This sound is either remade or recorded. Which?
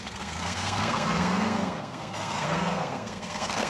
remade